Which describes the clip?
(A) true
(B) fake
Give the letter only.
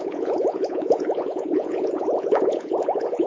B